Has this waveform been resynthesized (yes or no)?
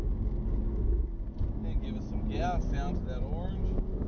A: no